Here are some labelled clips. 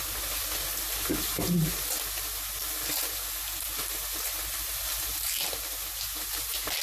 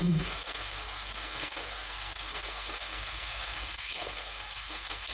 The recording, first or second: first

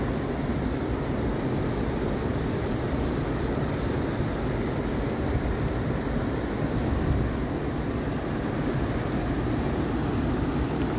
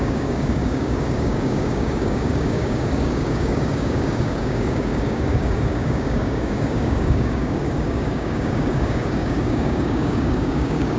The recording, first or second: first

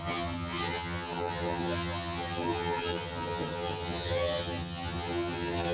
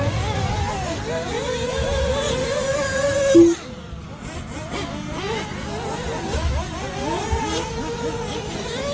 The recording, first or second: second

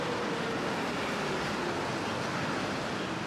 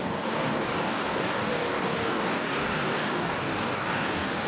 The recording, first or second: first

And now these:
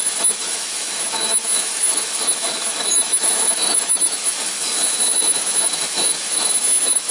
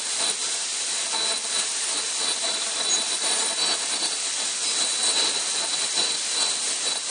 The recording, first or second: second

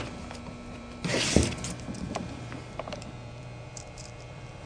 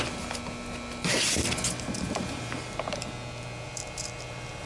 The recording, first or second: second